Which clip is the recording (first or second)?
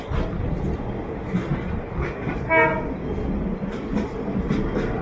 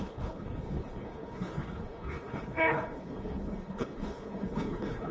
first